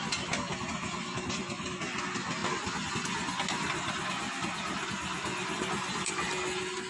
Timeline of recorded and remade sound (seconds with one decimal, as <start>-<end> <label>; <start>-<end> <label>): 0.0-6.9 recorded

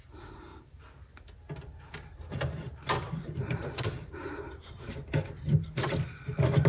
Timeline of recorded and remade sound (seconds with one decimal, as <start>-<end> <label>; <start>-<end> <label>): 0.0-0.5 remade; 0.5-2.3 recorded; 2.3-4.9 remade; 4.9-6.3 recorded; 6.3-6.7 remade

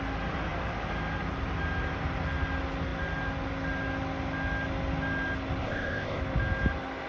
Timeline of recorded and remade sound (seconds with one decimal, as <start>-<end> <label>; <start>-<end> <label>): 0.0-5.6 recorded; 5.6-6.2 remade; 6.2-7.1 recorded

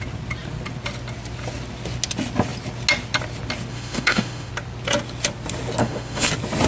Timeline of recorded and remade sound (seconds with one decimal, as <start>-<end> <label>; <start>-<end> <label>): 0.0-3.7 recorded; 3.7-4.5 remade; 4.5-5.8 recorded; 5.8-6.3 remade; 6.3-6.7 recorded

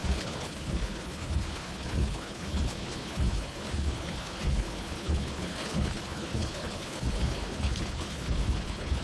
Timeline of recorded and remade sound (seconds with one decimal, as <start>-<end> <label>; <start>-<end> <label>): 0.0-9.0 remade